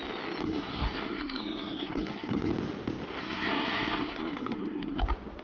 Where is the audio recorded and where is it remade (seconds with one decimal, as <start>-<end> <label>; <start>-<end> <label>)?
0.0-0.4 recorded; 0.4-2.5 remade; 2.5-3.2 recorded; 3.2-5.0 remade; 5.0-5.4 recorded